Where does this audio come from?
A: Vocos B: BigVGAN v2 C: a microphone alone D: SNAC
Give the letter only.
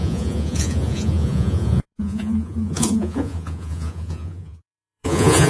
A